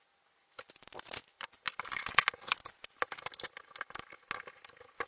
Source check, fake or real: real